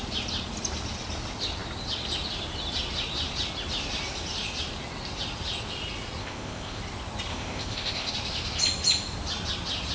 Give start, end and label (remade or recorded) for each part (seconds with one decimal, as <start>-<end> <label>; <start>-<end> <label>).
0.0-6.2 recorded; 6.2-6.8 remade; 6.8-7.3 recorded; 7.3-8.1 remade; 8.1-9.9 recorded